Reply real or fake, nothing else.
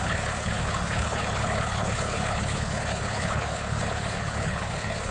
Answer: fake